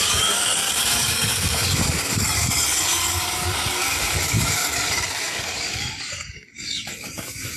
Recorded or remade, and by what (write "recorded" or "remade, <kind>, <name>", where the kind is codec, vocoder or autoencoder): remade, codec, DAC